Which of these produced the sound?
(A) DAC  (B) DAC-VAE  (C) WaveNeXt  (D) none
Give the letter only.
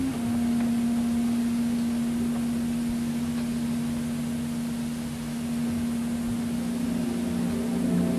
D